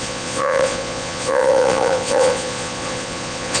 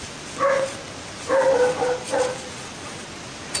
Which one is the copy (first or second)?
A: first